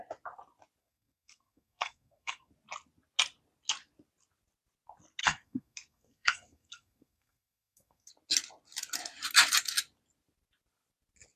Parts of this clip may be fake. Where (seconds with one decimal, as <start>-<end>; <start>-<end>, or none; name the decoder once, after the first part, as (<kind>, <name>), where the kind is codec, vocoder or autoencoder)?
0.8-2.5 (codec, SNAC); 5.2-8.1